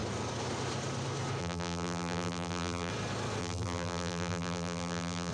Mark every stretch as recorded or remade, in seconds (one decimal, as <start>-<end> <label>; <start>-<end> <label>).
0.0-1.4 recorded; 1.4-2.9 remade; 2.9-3.4 recorded; 3.4-5.3 remade